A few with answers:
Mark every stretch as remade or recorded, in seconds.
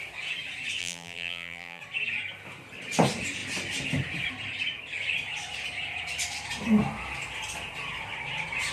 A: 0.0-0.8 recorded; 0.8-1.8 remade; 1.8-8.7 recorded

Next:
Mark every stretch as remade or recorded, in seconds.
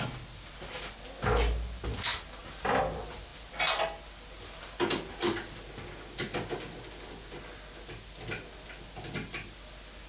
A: 0.0-10.1 recorded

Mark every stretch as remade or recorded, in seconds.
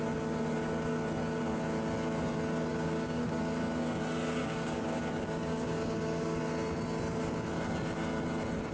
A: 0.0-2.7 recorded; 2.7-3.4 remade; 3.4-4.4 recorded; 4.4-5.0 remade; 5.0-5.4 recorded; 5.4-6.4 remade; 6.4-8.7 recorded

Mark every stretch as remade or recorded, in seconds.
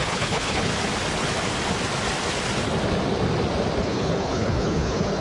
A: 0.0-0.7 remade; 0.7-3.8 recorded; 3.8-5.2 remade